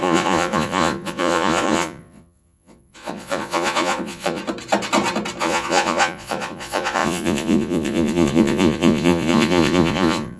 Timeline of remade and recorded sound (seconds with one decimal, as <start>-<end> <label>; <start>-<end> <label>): 0.0-4.4 remade; 4.4-5.4 recorded; 5.4-10.4 remade